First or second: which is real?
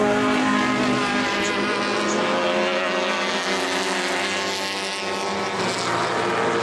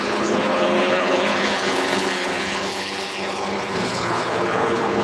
first